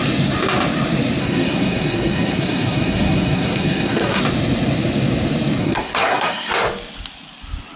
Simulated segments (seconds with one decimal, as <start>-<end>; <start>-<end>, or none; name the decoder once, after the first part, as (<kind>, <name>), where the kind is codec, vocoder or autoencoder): 1.2-4.2 (codec, SNAC); 5.6-6.5